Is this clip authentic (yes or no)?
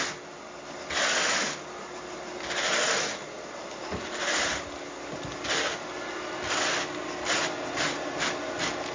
yes